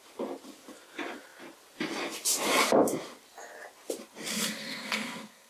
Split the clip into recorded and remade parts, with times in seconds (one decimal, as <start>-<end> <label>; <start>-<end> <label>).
0.0-4.3 recorded; 4.3-5.5 remade